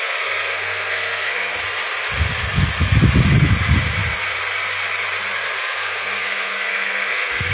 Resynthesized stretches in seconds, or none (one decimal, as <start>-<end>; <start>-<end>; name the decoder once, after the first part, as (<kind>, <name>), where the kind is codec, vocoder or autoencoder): 0.0-1.6 (codec, SNAC); 5.6-7.5